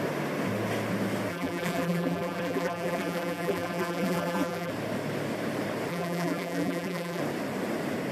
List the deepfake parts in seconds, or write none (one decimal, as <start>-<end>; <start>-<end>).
1.3-4.7; 5.9-7.2